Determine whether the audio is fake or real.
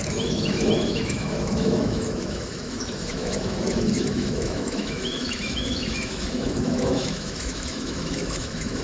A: fake